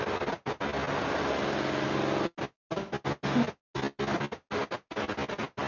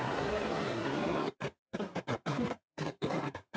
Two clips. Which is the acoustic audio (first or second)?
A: first